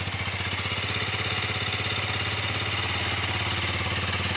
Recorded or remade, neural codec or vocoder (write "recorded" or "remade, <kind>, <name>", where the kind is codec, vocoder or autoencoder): recorded